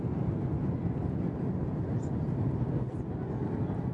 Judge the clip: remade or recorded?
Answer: recorded